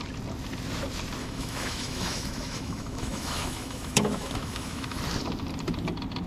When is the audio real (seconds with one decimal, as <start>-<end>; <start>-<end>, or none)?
0.0-1.2; 5.0-6.3